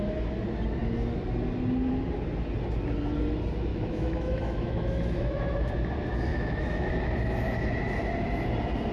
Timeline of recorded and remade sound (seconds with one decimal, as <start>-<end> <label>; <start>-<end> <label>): 0.0-3.7 recorded; 3.7-5.7 remade; 5.7-6.3 recorded; 6.3-6.9 remade; 6.9-8.9 recorded